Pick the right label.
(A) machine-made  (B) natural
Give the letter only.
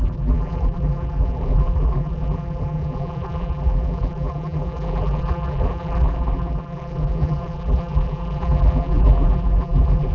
A